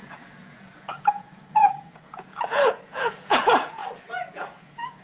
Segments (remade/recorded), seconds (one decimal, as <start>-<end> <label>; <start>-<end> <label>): 0.0-3.8 remade; 3.8-4.3 recorded; 4.3-5.0 remade